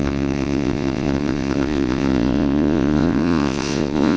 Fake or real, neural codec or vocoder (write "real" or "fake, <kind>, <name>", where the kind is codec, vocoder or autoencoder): fake, vocoder, Vocos